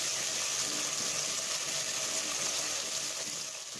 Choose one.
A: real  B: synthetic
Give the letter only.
A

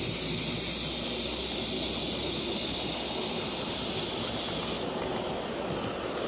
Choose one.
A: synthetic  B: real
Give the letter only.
B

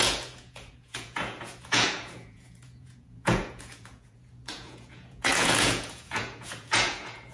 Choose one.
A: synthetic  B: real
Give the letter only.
A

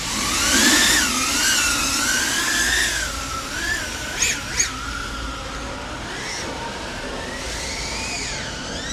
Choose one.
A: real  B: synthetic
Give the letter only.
A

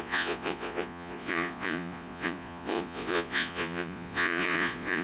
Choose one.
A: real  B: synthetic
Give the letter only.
B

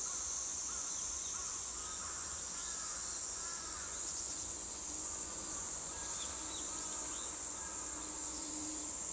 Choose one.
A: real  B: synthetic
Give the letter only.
B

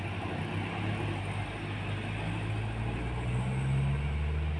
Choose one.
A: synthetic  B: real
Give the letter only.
B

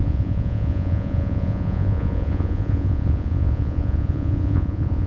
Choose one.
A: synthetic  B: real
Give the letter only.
A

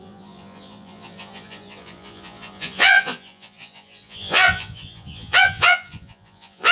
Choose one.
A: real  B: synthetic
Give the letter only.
B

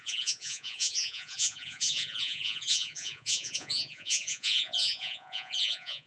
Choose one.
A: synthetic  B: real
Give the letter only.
A